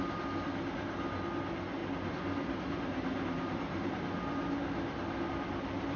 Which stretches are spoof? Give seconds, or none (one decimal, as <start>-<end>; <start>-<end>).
none